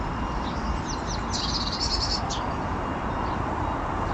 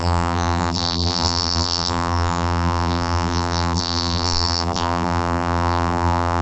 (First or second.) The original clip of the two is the first